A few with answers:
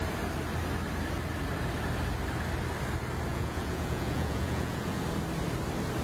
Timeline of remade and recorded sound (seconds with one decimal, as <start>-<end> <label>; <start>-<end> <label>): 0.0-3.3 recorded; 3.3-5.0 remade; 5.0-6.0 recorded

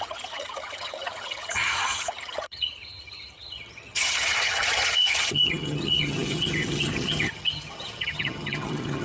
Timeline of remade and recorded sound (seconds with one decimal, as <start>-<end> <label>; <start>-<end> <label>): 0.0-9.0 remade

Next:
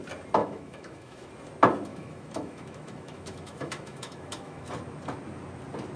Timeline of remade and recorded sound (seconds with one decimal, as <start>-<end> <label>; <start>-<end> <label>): 0.0-0.4 recorded; 0.4-1.3 remade; 1.3-1.9 recorded; 1.9-4.7 remade; 4.7-6.0 recorded

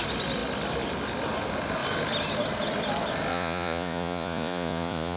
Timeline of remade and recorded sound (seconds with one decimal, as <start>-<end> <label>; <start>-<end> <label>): 0.0-3.3 recorded; 3.3-5.2 remade